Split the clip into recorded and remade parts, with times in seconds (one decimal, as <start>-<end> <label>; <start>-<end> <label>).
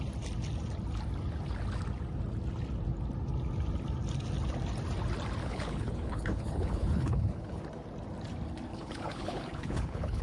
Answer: 0.0-5.4 recorded; 5.4-7.6 remade; 7.6-8.7 recorded; 8.7-10.2 remade